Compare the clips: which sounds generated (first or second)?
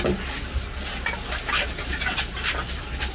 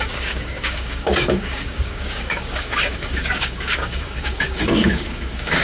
second